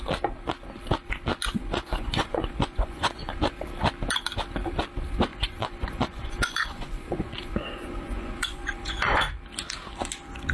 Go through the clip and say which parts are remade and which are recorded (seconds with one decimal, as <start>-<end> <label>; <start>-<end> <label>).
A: 0.0-1.6 recorded; 1.6-3.4 remade; 3.4-5.3 recorded; 5.3-9.2 remade; 9.2-10.5 recorded